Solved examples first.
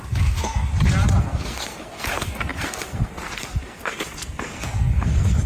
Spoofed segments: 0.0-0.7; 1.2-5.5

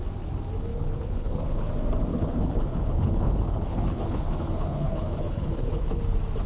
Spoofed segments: 0.7-1.7; 2.1-6.0

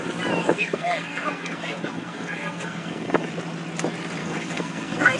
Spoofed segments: 0.4-3.3; 4.2-5.2